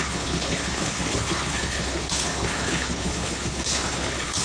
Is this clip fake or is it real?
fake